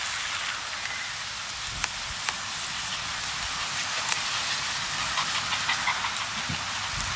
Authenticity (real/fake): real